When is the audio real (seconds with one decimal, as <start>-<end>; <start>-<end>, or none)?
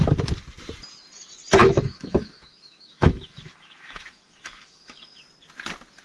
0.0-1.6; 5.2-6.0